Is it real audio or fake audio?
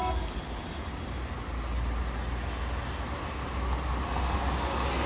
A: real